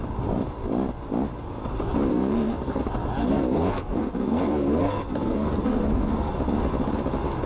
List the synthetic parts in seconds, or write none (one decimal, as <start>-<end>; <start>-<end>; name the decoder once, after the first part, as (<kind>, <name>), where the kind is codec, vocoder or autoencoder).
2.1-2.8 (codec, SNAC); 3.2-6.3